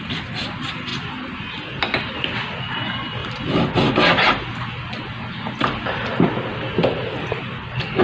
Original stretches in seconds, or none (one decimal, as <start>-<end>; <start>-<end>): 0.0-8.0